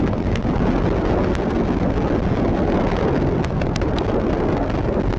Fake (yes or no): no